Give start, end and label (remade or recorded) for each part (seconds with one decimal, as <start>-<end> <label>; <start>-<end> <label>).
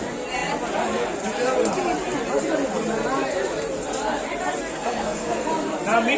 0.0-4.7 recorded; 4.7-5.5 remade; 5.5-6.2 recorded